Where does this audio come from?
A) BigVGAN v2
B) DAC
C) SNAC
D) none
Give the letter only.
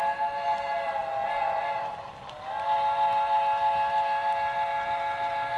D